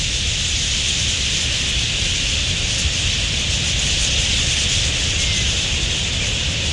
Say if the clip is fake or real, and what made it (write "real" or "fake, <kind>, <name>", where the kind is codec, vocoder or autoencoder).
real